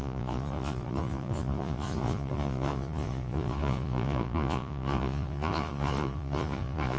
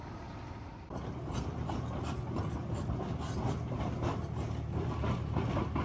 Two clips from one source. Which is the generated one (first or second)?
first